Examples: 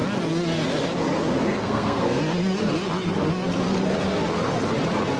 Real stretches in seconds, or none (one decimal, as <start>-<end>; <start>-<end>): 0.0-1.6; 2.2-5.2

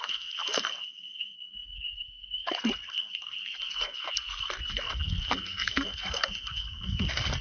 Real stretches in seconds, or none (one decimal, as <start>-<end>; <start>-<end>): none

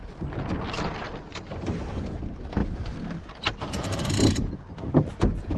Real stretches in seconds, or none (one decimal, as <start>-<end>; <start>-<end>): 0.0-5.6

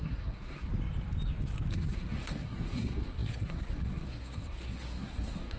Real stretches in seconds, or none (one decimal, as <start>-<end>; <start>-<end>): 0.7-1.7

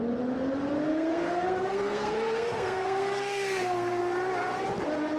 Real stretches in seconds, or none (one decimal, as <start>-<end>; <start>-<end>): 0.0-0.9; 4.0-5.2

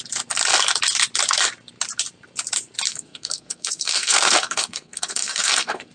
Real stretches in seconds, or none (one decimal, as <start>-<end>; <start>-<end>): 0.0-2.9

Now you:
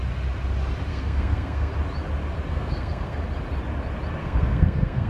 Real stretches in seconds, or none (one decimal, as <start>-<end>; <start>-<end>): 0.0-0.9; 1.7-2.5; 3.2-4.2

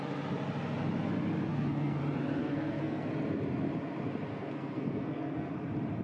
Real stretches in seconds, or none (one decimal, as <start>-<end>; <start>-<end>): 0.0-1.5; 2.0-2.4; 3.1-4.3; 5.5-6.0